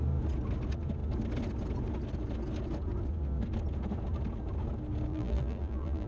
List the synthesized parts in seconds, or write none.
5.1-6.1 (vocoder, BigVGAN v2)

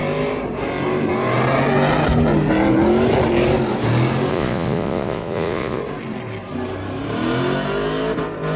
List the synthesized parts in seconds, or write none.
4.3-5.8 (vocoder, Vocos)

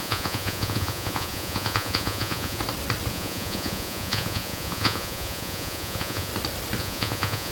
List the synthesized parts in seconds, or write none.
0.0-2.6 (vocoder, Vocos); 3.1-6.3; 6.8-7.5

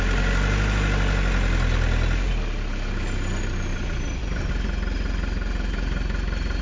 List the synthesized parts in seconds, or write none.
3.7-4.5 (vocoder, BigVGAN v2)

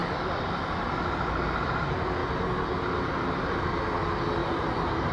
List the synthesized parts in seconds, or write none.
4.4-5.1 (vocoder, BigVGAN v2)

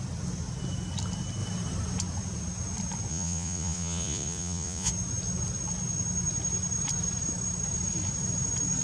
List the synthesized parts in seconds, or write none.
3.1-4.9 (vocoder, Vocos)